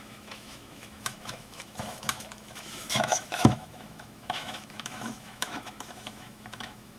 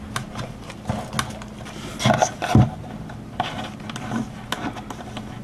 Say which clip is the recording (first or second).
second